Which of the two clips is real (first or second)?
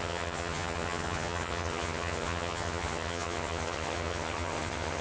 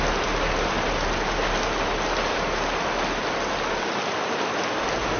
second